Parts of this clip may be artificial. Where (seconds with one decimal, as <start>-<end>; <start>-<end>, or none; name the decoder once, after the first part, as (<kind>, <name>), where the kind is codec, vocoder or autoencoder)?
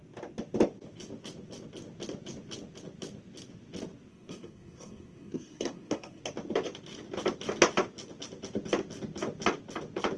4.1-6.2 (codec, SNAC)